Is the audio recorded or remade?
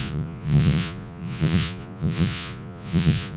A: remade